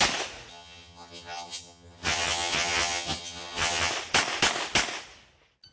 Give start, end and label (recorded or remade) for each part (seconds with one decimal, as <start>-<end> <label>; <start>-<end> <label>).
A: 0.0-0.5 recorded; 0.5-3.9 remade; 3.9-5.7 recorded

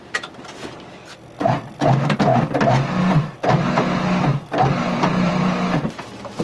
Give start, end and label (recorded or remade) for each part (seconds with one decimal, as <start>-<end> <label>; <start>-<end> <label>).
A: 0.0-4.3 recorded; 4.3-5.3 remade; 5.3-6.4 recorded

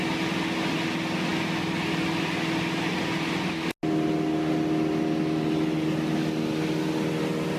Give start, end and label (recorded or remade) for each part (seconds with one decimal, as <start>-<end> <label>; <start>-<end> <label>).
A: 0.0-7.6 recorded

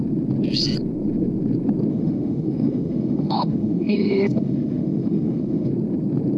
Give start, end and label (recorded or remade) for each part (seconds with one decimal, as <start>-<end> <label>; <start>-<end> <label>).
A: 0.0-1.9 recorded; 1.9-5.7 remade; 5.7-6.4 recorded

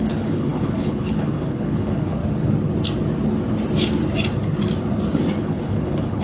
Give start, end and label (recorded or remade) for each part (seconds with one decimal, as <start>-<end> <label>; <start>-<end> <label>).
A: 0.0-2.2 remade; 2.2-5.4 recorded; 5.4-6.2 remade

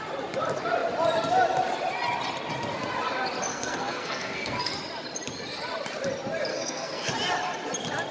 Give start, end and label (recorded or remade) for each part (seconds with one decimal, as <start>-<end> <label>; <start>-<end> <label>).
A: 0.0-3.5 recorded; 3.5-4.7 remade; 4.7-6.5 recorded; 6.5-7.1 remade; 7.1-8.1 recorded